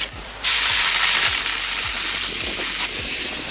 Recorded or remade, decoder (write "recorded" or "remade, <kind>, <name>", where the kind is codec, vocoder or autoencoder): recorded